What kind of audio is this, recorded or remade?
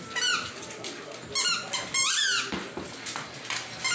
recorded